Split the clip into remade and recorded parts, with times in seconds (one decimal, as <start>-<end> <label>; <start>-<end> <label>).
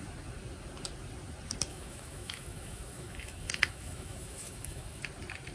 0.0-1.7 recorded; 1.7-5.0 remade; 5.0-5.5 recorded